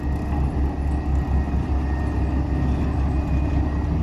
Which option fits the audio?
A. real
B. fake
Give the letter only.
A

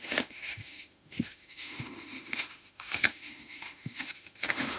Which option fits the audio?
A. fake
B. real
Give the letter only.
A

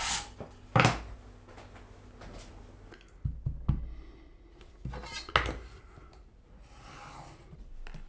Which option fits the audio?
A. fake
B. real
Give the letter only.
B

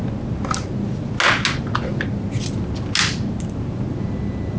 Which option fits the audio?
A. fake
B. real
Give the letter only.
B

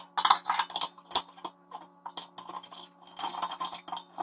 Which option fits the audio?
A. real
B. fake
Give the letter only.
A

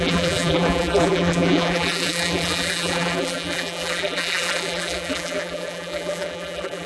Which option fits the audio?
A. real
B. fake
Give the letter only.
B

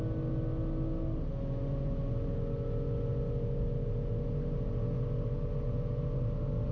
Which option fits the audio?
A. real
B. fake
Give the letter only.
A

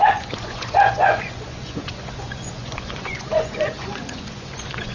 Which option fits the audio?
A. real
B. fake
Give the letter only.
B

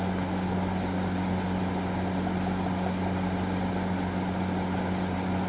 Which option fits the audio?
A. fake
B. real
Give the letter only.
B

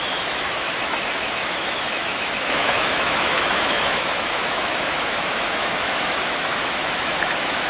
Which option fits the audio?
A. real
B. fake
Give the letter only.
B